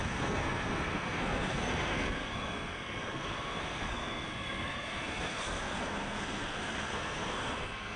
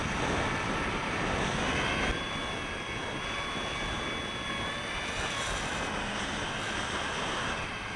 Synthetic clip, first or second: first